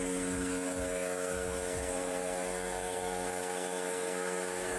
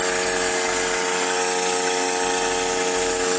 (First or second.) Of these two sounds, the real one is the second